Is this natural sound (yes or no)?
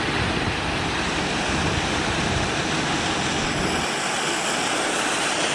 yes